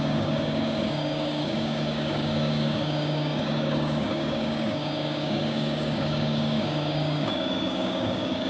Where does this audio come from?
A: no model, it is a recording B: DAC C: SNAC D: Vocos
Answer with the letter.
B